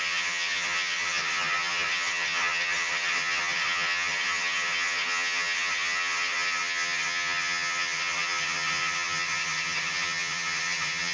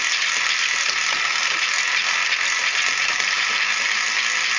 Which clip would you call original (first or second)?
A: second